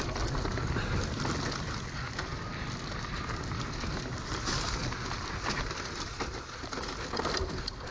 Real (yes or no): yes